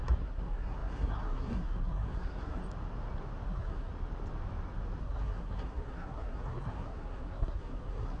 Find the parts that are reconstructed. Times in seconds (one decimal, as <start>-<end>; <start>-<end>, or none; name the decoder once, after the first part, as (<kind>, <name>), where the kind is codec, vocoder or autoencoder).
0.0-2.6 (codec, SNAC); 3.5-3.9; 5.0-8.2